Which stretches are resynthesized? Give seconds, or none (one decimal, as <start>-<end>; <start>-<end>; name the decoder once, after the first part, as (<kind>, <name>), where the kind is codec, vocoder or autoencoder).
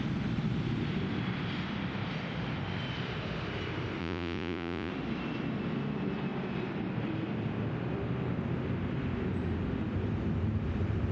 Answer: 4.0-4.9 (vocoder, Vocos)